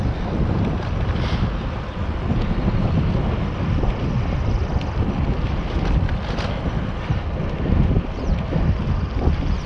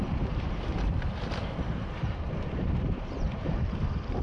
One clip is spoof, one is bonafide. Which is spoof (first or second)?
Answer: second